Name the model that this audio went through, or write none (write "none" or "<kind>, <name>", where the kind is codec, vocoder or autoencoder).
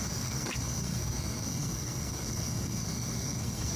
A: codec, SNAC